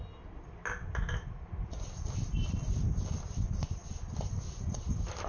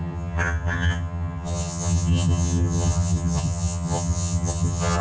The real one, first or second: first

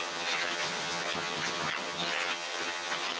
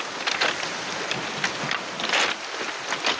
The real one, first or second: second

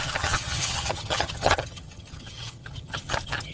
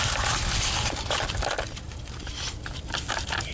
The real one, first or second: second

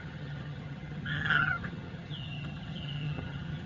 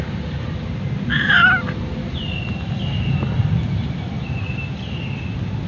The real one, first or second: second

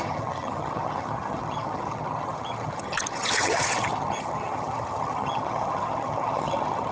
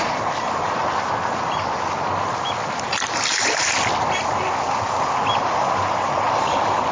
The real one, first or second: second